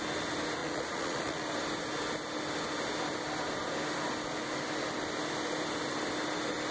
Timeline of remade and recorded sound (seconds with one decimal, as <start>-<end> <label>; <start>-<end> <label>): 0.0-0.6 recorded; 0.6-1.5 remade; 1.5-6.7 recorded